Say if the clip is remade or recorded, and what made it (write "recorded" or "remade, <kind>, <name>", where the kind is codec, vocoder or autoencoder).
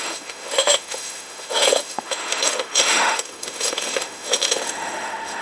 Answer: remade, autoencoder, DAC-VAE